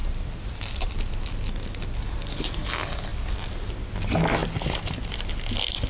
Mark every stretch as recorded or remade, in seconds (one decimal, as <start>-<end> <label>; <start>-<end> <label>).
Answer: 0.0-1.3 remade; 1.3-4.4 recorded; 4.4-5.3 remade; 5.3-5.9 recorded